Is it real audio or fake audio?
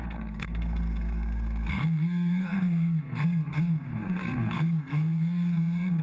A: fake